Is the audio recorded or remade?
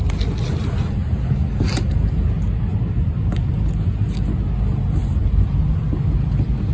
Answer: recorded